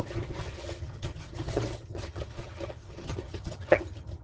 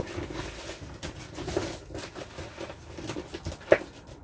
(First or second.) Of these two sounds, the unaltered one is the second